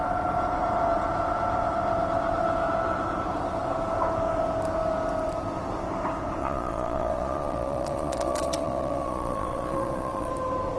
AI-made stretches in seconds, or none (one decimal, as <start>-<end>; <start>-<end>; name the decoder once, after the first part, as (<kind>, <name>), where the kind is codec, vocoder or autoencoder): 6.4-10.3 (vocoder, Vocos)